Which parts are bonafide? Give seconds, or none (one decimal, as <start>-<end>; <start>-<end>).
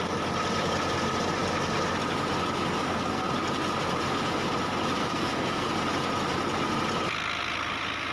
0.0-2.8; 3.3-5.0; 5.7-8.1